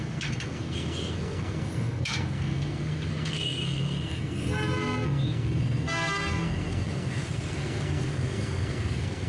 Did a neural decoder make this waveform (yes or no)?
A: yes